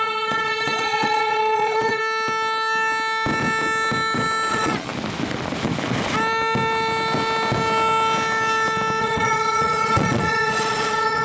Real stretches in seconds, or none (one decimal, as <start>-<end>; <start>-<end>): 2.0-4.5; 4.9-9.0